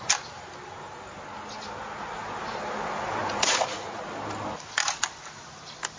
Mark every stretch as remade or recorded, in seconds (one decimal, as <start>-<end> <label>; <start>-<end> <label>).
0.0-3.2 recorded; 3.2-4.0 remade; 4.0-6.0 recorded